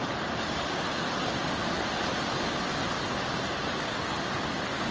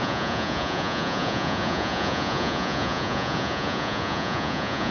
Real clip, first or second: first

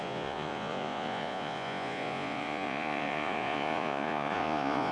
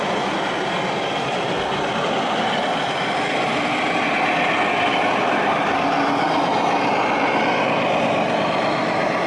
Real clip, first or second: second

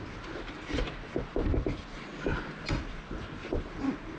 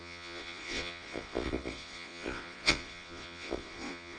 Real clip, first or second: first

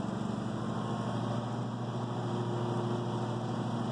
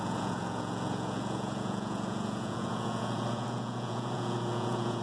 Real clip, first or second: first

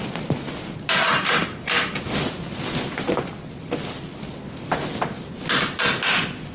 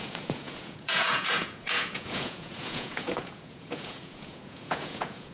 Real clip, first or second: first